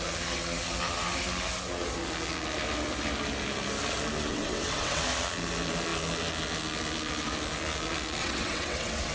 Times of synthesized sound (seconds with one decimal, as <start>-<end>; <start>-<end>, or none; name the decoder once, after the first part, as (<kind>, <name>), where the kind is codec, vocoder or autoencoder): 4.3-5.0 (vocoder, WaveNeXt); 8.2-9.1